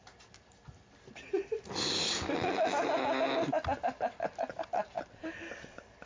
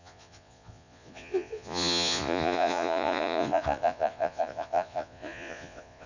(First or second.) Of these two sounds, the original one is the first